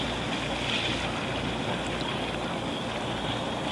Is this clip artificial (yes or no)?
no